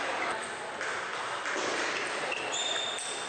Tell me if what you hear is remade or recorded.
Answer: recorded